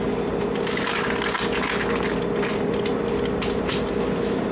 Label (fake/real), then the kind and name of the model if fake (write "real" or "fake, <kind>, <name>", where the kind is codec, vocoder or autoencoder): real